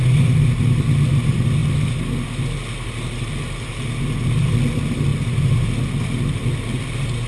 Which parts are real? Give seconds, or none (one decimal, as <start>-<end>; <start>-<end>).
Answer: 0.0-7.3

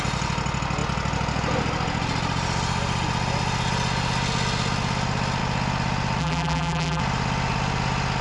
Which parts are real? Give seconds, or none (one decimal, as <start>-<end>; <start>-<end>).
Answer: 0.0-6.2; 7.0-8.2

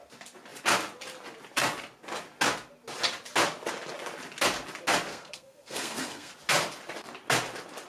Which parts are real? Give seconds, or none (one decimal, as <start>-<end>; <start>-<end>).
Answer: 0.0-5.1; 6.3-7.9

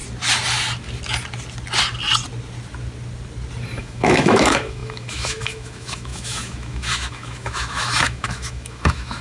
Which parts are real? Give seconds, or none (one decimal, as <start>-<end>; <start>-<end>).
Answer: 0.0-3.8